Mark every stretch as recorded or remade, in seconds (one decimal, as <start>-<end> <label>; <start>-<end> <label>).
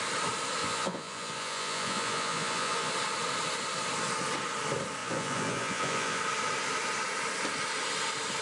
0.0-0.6 recorded; 0.6-2.9 remade; 2.9-5.0 recorded; 5.0-6.2 remade; 6.2-8.4 recorded